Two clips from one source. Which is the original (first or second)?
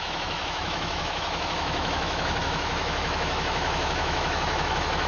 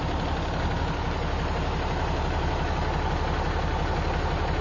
second